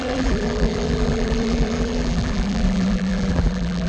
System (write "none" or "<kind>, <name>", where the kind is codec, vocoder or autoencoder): vocoder, BigVGAN v2